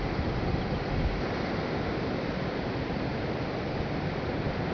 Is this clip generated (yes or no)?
no